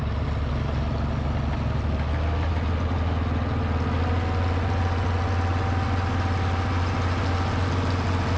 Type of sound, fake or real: real